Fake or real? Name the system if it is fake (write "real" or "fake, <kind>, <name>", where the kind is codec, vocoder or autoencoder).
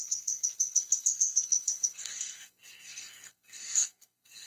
fake, codec, SNAC